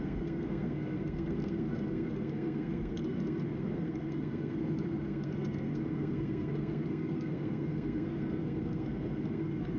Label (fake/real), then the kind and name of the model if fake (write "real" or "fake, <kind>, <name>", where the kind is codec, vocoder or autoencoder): fake, codec, SNAC